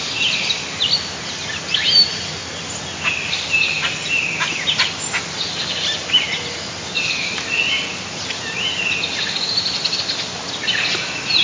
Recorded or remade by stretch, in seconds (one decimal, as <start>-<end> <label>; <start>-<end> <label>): 0.0-11.4 recorded